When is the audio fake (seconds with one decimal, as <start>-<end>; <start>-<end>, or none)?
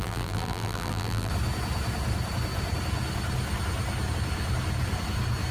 0.0-1.3